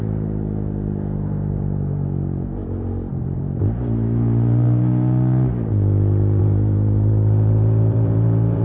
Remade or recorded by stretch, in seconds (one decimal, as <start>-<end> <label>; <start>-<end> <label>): 0.0-4.9 remade; 4.9-6.4 recorded; 6.4-8.6 remade